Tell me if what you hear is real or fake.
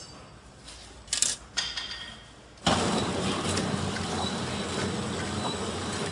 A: real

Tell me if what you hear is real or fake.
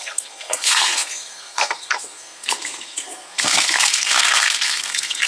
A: fake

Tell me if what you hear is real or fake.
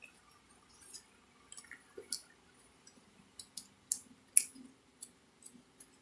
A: real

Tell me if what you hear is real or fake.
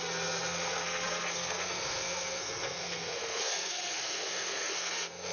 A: fake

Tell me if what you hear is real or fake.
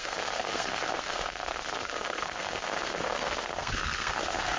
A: fake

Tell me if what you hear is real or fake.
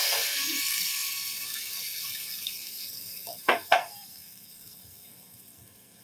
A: fake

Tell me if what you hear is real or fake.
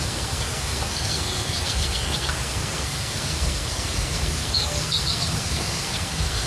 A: fake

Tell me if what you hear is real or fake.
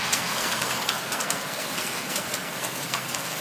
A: fake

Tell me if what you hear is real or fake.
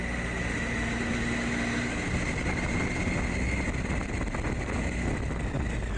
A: real